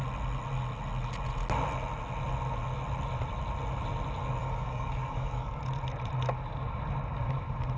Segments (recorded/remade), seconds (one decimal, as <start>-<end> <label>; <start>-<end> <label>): 0.0-4.4 recorded; 4.4-5.6 remade; 5.6-7.8 recorded